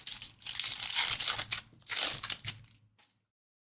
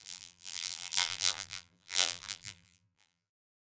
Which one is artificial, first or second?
second